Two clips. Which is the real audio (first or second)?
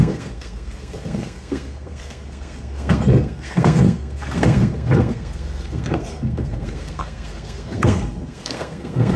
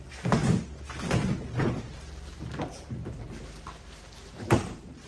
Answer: second